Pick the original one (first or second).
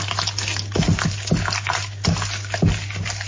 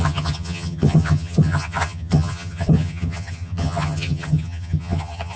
first